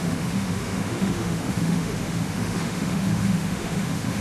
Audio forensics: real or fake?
fake